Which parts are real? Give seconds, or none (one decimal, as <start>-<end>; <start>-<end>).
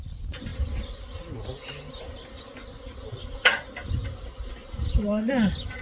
0.0-5.8